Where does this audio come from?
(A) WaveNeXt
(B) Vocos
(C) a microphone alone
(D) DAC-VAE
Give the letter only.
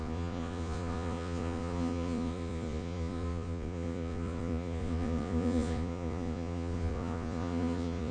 B